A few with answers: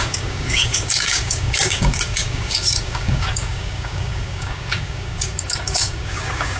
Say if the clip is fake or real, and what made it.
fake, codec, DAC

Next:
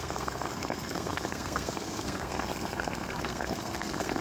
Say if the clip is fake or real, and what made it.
fake, codec, SNAC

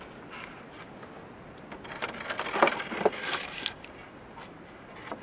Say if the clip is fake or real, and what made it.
real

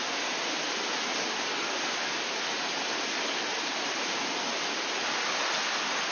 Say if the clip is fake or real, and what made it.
real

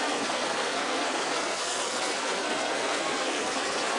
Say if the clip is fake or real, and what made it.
fake, codec, SNAC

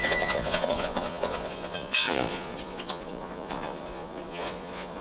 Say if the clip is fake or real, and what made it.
fake, vocoder, Vocos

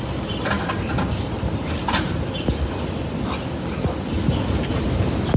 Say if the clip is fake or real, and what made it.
real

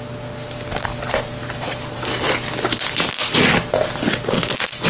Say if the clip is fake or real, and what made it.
real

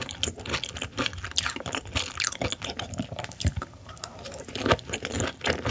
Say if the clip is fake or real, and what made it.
real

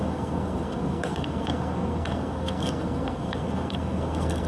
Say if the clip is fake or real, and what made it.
fake, codec, SNAC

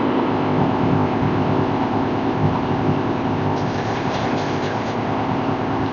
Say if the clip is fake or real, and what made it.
fake, codec, ZipCodec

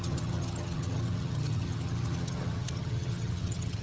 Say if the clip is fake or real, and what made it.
fake, vocoder, HiFi-GAN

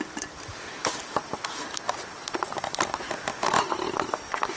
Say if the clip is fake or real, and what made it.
real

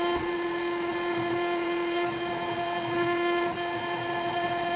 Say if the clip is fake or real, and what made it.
fake, vocoder, Vocos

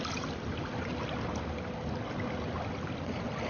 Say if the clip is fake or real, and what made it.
real